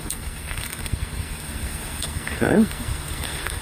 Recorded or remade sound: remade